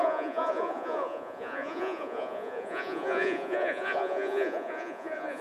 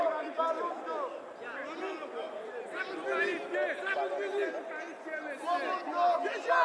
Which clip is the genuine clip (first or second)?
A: second